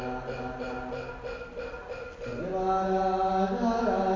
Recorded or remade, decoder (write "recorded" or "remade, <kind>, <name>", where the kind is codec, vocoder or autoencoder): recorded